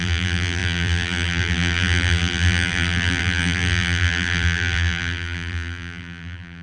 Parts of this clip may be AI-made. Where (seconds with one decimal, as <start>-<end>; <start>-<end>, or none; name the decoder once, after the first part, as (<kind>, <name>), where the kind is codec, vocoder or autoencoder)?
0.0-6.6 (vocoder, BigVGAN v2)